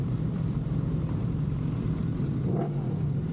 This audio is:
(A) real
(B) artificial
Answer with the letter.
B